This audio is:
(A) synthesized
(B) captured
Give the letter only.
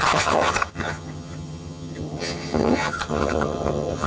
A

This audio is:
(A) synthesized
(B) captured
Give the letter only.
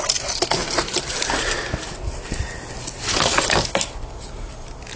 B